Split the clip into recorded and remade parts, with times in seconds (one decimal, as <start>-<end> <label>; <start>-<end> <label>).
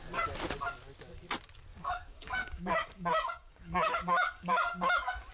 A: 0.0-1.7 recorded; 1.7-5.3 remade